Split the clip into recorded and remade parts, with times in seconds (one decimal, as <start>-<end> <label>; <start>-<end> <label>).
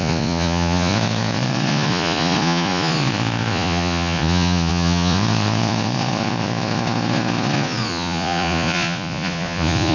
0.0-9.9 remade